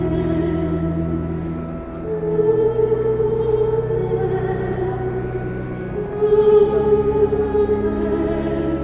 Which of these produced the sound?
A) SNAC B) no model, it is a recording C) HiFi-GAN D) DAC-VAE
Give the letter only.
B